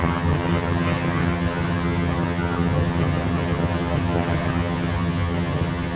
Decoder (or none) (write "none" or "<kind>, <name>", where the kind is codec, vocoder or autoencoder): vocoder, HiFi-GAN